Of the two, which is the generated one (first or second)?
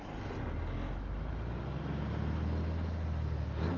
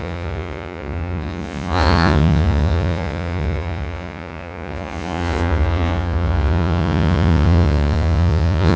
second